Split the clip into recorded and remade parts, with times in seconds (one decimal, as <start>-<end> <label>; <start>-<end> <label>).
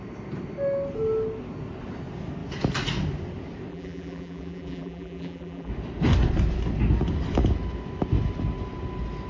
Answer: 0.0-3.7 recorded; 3.7-5.7 remade; 5.7-9.3 recorded